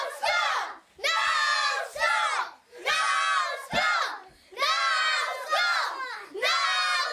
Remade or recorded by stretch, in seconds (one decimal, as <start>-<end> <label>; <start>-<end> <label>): 0.0-7.1 recorded